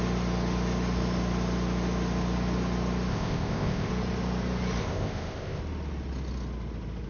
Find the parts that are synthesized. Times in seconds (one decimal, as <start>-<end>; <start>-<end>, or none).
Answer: 3.1-3.9; 4.8-5.6